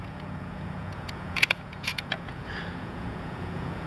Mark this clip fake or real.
fake